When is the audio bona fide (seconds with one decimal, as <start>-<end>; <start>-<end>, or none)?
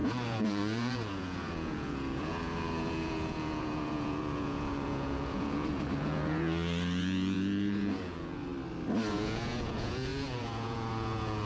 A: 8.5-9.1